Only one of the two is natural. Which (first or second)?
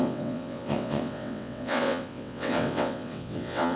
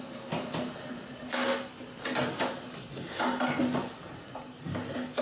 second